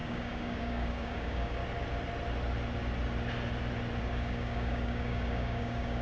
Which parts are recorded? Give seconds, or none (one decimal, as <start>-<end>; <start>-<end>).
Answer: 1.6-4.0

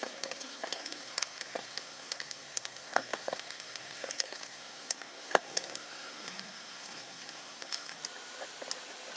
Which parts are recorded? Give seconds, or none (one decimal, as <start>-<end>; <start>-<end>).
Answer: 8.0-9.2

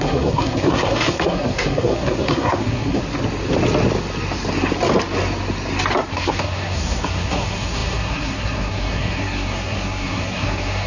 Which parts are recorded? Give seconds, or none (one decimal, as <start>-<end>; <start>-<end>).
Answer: 3.0-6.1

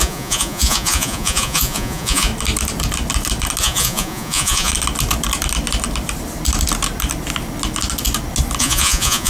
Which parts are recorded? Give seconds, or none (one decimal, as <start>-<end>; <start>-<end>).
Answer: 2.3-3.6; 4.7-8.6

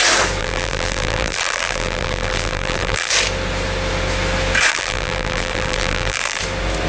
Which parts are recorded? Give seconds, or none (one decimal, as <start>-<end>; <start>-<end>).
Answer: 0.0-0.4; 3.1-4.7; 6.4-6.9

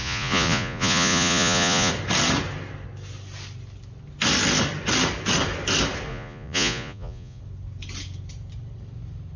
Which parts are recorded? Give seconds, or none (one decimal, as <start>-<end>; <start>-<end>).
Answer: 1.9-6.1; 7.4-9.4

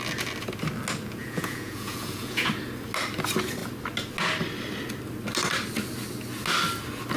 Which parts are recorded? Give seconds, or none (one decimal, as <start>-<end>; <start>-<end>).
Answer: 0.0-1.2; 2.5-7.2